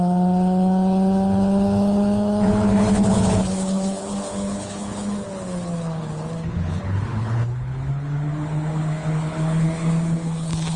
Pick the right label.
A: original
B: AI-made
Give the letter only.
B